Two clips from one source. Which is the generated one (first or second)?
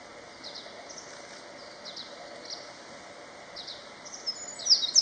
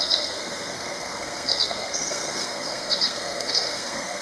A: second